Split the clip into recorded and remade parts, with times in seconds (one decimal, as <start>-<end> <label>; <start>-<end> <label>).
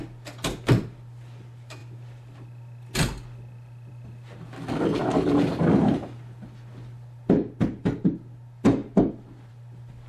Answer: 0.0-10.1 recorded